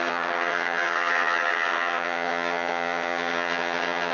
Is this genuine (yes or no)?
no